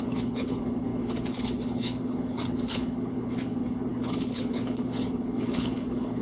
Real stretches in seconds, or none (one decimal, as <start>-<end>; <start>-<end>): none